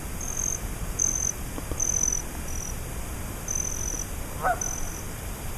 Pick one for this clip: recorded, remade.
recorded